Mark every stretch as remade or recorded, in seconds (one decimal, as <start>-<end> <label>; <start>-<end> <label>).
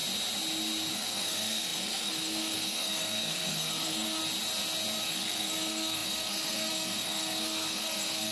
0.0-0.9 recorded; 0.9-4.2 remade; 4.2-5.0 recorded; 5.0-8.3 remade